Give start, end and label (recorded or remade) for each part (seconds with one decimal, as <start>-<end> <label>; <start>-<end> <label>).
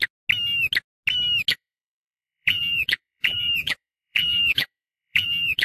0.0-1.5 recorded; 1.5-5.6 remade